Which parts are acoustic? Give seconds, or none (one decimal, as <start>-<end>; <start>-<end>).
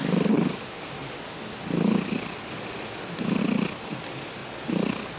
0.0-5.2